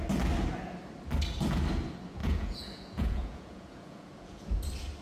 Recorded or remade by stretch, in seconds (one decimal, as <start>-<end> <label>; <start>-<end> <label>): 0.0-2.2 recorded; 2.2-4.6 remade; 4.6-5.0 recorded